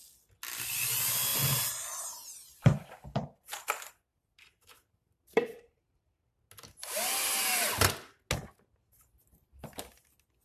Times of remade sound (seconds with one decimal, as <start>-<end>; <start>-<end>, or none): 1.3-1.9; 4.1-6.0; 8.9-10.0